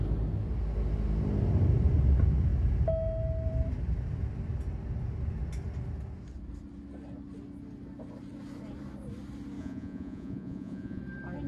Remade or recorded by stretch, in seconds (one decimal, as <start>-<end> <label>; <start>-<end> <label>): 0.0-9.6 recorded; 9.6-11.0 remade; 11.0-11.5 recorded